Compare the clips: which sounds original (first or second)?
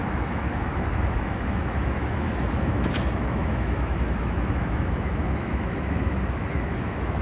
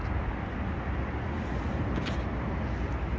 second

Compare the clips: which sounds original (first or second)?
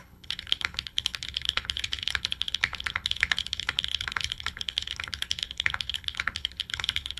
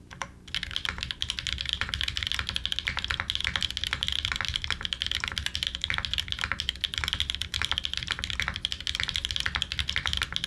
second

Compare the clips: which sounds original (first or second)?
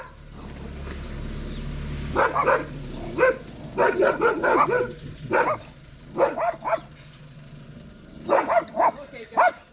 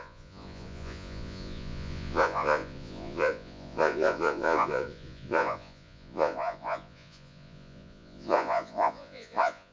first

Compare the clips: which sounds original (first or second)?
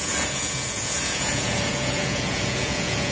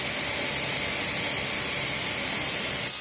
second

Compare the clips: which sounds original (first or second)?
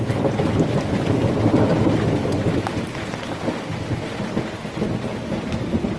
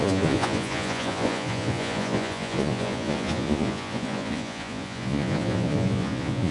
first